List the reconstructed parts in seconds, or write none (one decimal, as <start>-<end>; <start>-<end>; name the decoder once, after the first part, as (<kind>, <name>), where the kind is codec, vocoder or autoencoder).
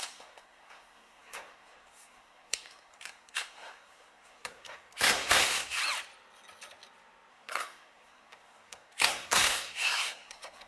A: 0.0-5.8 (codec, SNAC); 7.3-10.7